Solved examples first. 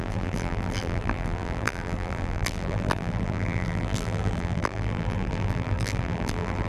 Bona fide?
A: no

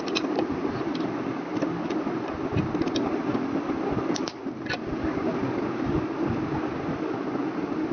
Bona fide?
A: yes